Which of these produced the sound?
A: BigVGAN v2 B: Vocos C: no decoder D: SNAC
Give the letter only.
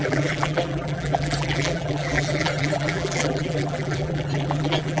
A